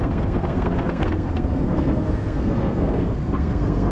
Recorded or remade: remade